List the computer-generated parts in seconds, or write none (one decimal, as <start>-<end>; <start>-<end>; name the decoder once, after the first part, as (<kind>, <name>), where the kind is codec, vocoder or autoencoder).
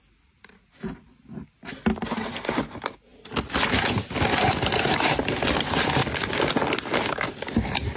none